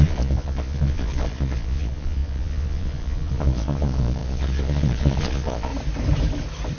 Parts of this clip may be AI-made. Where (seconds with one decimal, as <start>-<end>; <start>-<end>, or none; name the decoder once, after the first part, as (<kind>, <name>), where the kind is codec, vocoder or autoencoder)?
0.0-5.7 (vocoder, Vocos)